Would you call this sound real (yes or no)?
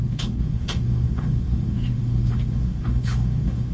no